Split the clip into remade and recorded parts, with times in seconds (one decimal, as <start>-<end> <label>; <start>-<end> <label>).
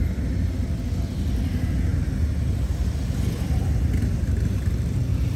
0.0-5.4 recorded